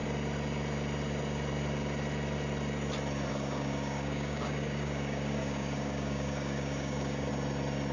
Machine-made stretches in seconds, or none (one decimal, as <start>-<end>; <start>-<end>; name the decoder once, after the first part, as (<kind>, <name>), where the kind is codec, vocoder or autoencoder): 3.3-7.3 (codec, DAC)